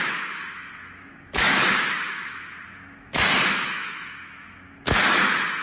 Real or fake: fake